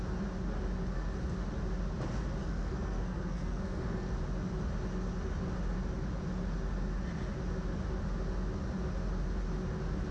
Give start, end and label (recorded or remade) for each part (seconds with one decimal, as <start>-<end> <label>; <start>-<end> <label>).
0.0-2.4 recorded; 2.4-4.2 remade; 4.2-10.1 recorded